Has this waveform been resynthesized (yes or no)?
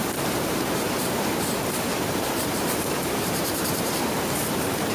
yes